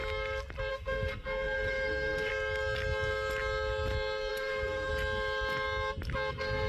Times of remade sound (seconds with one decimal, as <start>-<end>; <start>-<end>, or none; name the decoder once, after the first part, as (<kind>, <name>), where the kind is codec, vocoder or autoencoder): 0.7-2.3 (codec, SNAC); 4.3-4.9; 6.3-6.7

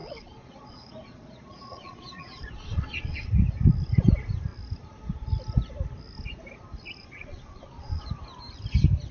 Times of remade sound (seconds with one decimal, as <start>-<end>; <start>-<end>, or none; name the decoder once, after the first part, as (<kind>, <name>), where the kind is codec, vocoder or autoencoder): 0.0-3.3 (vocoder, Vocos); 7.0-8.1